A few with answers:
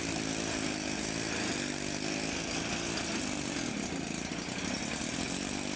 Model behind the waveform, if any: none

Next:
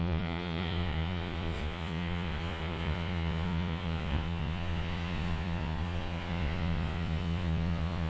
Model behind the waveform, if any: vocoder, Vocos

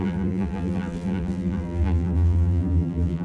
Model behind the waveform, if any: vocoder, BigVGAN v2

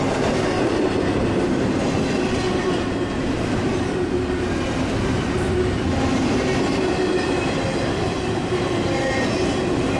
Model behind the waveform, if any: none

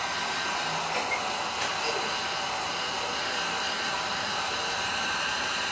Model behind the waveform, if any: none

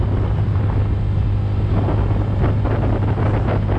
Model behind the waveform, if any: none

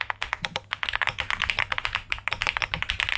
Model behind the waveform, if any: none